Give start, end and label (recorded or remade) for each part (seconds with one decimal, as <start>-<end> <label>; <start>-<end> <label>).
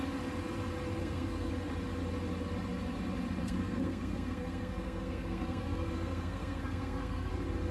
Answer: 0.0-1.0 recorded; 1.0-1.5 remade; 1.5-3.4 recorded; 3.4-7.3 remade; 7.3-7.7 recorded